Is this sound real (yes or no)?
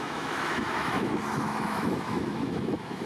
no